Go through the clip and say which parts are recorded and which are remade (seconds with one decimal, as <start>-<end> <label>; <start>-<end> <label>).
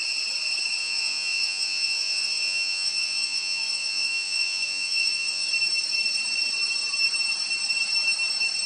0.0-0.8 recorded; 0.8-5.5 remade; 5.5-8.7 recorded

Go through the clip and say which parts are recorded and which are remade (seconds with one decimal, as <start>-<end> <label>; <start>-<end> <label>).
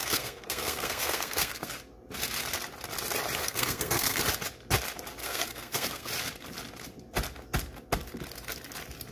0.0-1.8 remade; 1.8-3.4 recorded; 3.4-4.2 remade; 4.2-5.2 recorded; 5.2-6.1 remade; 6.1-9.1 recorded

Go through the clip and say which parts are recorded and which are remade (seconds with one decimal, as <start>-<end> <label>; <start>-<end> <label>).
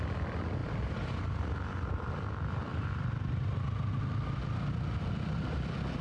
0.0-0.6 recorded; 0.6-1.9 remade; 1.9-2.7 recorded; 2.7-3.9 remade; 3.9-6.0 recorded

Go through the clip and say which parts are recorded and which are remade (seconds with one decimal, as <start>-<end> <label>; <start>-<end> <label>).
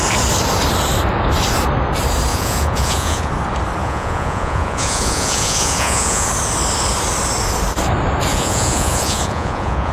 0.0-2.3 recorded; 2.3-3.3 remade; 3.3-3.8 recorded; 3.8-6.3 remade; 6.3-8.3 recorded; 8.3-9.9 remade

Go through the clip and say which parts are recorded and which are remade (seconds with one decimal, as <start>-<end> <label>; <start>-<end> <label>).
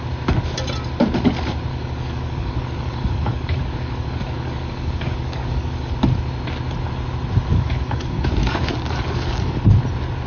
0.0-1.7 recorded; 1.7-5.9 remade; 5.9-7.5 recorded; 7.5-9.8 remade; 9.8-10.3 recorded